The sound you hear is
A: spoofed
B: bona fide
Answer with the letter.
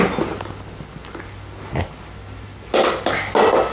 B